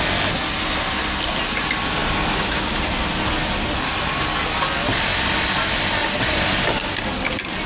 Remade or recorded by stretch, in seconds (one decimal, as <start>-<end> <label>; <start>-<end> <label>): 0.0-7.7 recorded